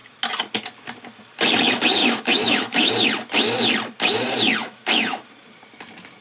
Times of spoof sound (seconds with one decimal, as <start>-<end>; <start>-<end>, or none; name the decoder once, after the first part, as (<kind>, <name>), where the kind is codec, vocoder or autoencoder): 2.0-2.9 (autoencoder, DAC-VAE); 4.6-5.3